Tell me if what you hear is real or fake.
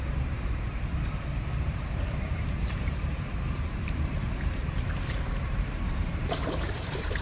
fake